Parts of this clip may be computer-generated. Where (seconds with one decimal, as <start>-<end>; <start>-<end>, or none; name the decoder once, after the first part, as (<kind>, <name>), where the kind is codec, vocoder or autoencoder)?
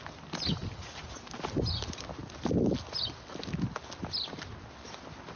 none